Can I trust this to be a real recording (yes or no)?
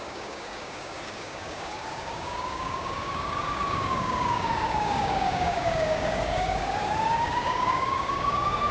no